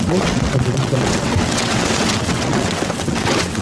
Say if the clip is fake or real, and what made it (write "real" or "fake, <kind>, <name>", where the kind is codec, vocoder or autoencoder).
fake, vocoder, WaveNeXt